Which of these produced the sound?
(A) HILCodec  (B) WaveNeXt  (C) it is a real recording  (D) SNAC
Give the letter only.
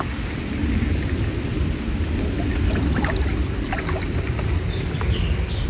C